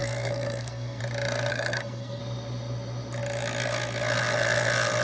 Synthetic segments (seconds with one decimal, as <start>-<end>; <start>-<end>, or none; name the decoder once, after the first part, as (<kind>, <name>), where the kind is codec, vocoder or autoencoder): 0.0-1.0 (codec, SNAC); 1.5-2.2